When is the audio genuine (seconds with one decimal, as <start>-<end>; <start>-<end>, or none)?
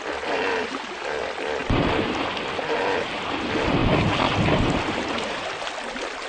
0.0-1.6; 2.3-6.3